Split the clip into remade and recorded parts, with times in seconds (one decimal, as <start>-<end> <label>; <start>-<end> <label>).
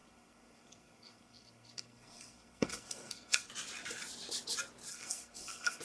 0.0-3.5 remade; 3.5-4.9 recorded; 4.9-5.8 remade